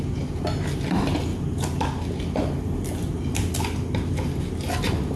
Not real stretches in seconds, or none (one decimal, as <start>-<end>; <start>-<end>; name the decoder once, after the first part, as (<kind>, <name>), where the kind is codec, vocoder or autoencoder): none